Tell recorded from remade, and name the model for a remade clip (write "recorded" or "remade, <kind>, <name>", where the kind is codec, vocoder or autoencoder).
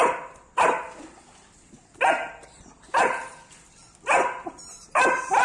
recorded